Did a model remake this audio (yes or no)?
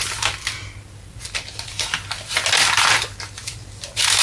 no